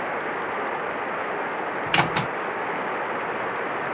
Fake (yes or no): no